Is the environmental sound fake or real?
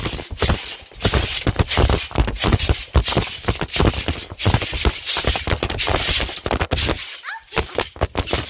real